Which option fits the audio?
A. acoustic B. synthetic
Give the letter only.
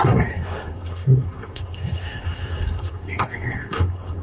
B